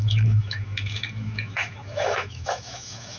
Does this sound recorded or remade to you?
remade